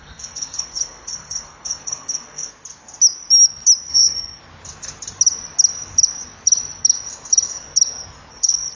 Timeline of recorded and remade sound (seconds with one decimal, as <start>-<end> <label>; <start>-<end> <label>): 0.0-2.5 remade; 2.5-3.9 recorded; 3.9-4.4 remade; 4.4-8.3 recorded; 8.3-8.8 remade

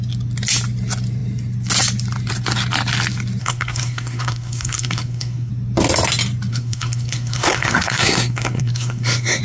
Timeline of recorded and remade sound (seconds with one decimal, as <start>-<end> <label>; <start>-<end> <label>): 0.0-3.4 recorded; 3.4-5.5 remade; 5.5-6.5 recorded; 6.5-9.4 remade